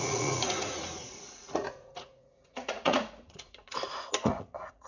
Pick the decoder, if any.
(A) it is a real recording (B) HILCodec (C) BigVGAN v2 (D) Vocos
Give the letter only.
D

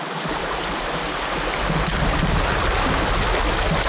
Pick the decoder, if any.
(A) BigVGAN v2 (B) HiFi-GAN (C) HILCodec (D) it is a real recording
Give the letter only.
D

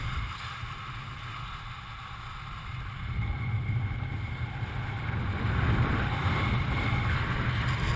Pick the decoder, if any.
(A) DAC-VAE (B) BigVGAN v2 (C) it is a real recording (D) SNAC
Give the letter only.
C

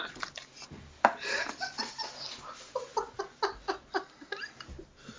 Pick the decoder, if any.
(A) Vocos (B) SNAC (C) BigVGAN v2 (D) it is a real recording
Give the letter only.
D